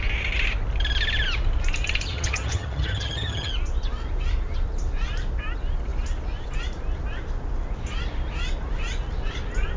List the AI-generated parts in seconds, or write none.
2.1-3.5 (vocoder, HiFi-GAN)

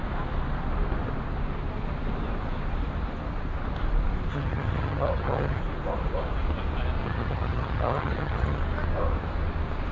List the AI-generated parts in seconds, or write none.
4.3-5.6 (vocoder, HiFi-GAN); 7.0-8.6

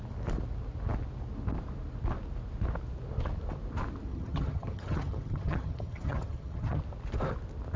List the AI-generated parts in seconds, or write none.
4.1-6.8 (vocoder, HiFi-GAN)